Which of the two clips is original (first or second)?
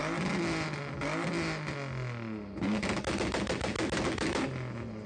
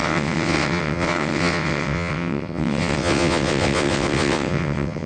first